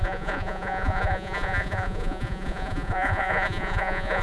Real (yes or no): no